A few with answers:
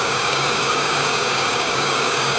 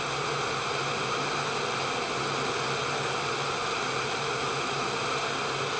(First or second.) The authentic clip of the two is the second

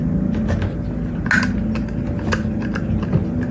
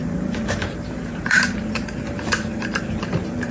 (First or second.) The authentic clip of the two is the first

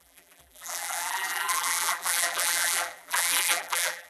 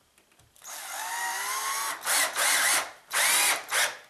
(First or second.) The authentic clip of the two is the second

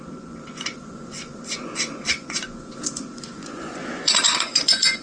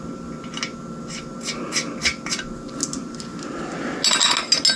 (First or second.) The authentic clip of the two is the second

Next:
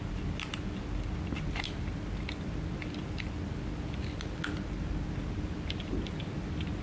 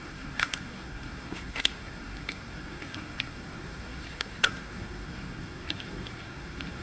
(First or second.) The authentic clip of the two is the first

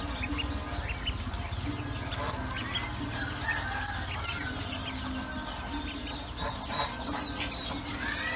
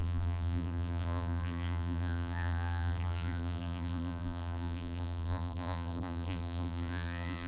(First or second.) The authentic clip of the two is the first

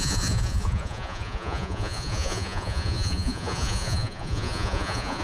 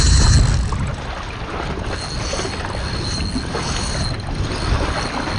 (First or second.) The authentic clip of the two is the second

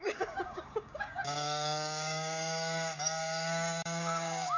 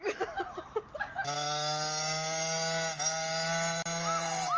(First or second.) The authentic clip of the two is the second